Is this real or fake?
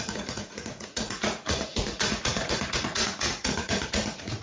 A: fake